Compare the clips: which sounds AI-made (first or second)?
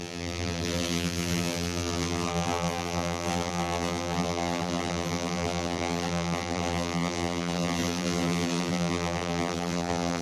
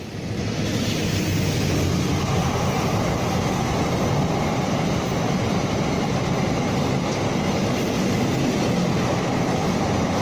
first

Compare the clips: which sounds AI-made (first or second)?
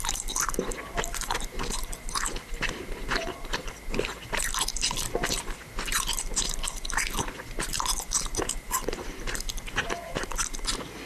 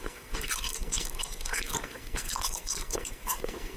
second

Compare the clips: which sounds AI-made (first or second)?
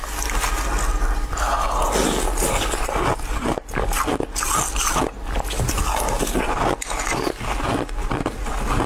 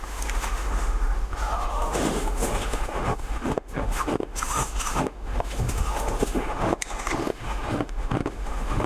second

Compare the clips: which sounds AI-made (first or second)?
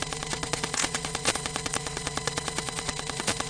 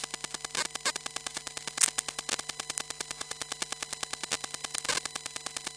first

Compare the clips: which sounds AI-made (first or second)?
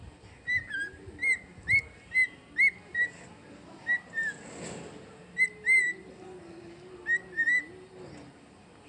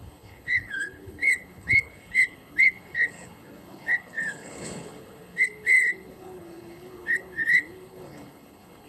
second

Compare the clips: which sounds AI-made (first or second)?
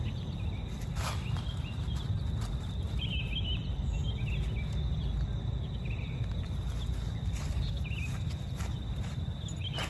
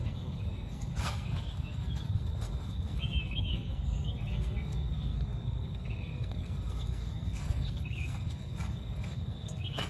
second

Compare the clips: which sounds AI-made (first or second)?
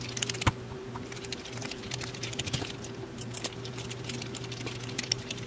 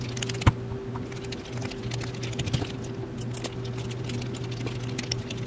first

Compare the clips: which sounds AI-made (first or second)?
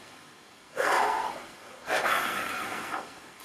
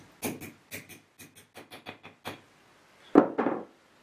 first